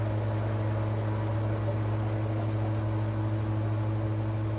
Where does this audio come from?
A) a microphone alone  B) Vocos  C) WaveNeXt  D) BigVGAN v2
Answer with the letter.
A